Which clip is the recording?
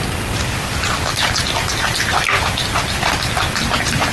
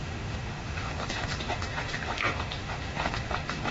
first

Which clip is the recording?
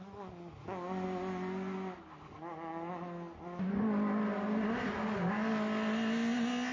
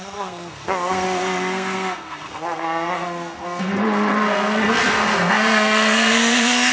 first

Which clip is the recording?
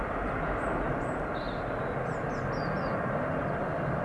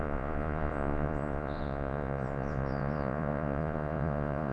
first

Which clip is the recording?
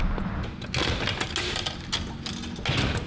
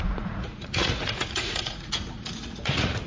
first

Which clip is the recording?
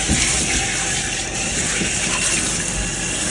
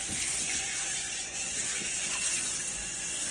first